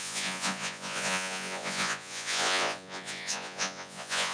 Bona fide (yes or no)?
no